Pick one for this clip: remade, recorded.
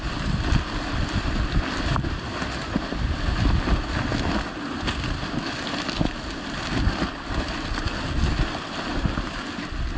recorded